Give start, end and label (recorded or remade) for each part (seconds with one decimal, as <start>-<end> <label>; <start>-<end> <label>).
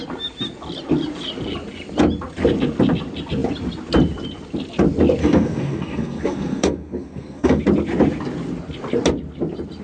0.0-5.2 recorded; 5.2-7.6 remade; 7.6-9.8 recorded